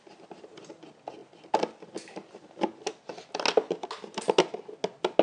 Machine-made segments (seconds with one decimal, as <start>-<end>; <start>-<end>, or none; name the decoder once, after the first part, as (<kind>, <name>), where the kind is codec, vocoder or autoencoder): none